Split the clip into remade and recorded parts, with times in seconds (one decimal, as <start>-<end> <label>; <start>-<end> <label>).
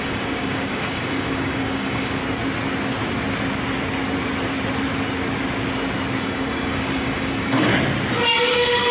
0.0-2.2 remade; 2.2-6.2 recorded; 6.2-7.7 remade; 7.7-8.5 recorded; 8.5-8.9 remade